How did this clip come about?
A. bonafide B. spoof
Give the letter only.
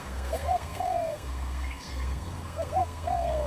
B